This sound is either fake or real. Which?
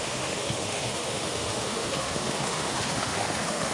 fake